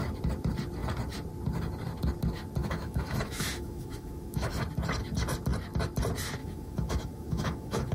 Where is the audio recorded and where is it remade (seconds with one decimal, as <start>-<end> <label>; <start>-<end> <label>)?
0.0-2.6 recorded; 2.6-4.6 remade; 4.6-6.4 recorded; 6.4-7.9 remade